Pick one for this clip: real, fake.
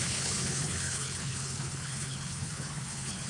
fake